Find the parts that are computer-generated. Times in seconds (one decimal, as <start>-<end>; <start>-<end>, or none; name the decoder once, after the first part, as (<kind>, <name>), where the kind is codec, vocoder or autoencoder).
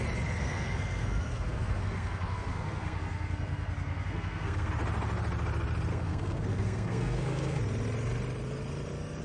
0.4-4.7 (codec, SNAC); 5.9-7.6